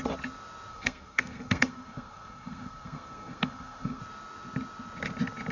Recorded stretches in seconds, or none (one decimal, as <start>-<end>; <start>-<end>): 0.0-0.7; 4.0-5.5